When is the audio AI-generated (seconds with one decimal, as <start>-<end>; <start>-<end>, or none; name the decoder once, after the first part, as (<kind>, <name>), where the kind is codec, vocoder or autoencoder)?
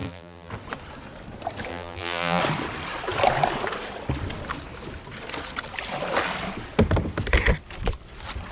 0.0-0.5 (vocoder, BigVGAN v2); 1.7-2.4